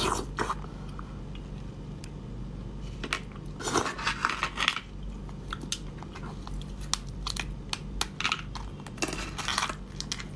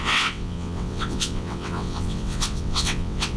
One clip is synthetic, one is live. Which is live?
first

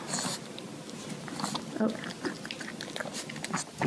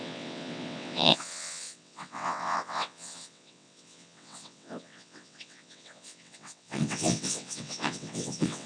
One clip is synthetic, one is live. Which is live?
first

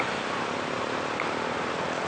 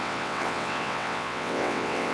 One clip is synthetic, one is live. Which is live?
first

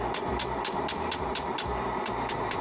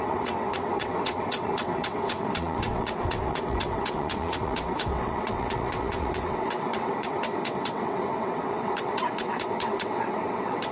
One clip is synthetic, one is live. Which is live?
first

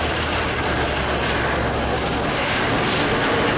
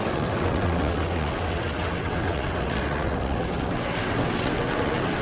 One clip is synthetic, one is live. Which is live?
first